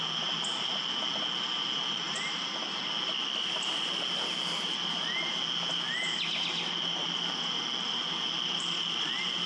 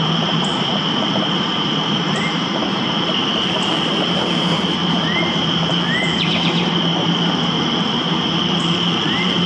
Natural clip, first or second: first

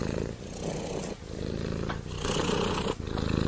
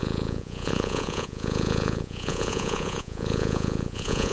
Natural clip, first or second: first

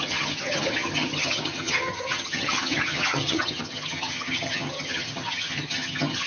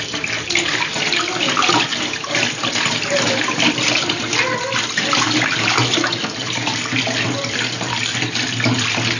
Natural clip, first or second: second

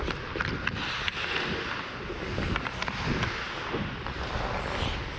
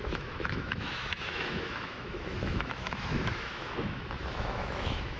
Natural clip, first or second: first